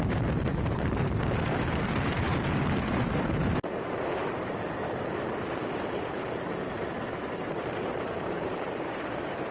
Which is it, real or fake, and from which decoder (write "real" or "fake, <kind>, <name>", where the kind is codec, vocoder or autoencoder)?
fake, vocoder, BigVGAN v2